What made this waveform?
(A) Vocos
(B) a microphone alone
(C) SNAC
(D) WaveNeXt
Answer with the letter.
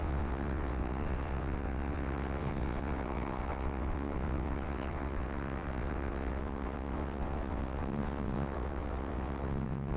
D